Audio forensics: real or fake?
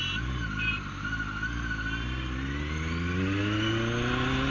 real